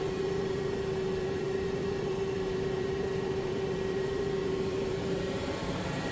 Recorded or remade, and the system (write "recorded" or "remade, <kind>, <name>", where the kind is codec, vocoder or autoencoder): remade, vocoder, BigVGAN v2